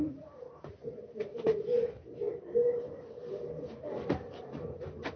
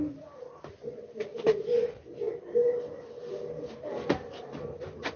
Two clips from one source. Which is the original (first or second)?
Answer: second